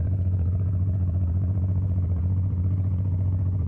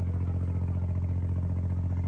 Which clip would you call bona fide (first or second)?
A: second